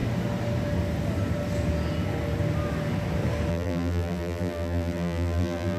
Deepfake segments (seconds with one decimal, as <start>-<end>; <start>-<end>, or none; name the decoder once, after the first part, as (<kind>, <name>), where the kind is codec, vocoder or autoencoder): 3.5-5.8 (vocoder, BigVGAN v2)